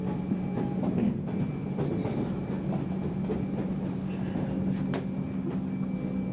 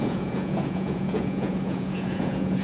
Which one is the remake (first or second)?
second